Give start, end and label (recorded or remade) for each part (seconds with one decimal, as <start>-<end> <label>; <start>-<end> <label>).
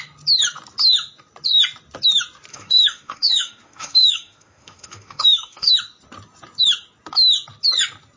0.0-2.5 recorded; 2.5-5.7 remade; 5.7-8.2 recorded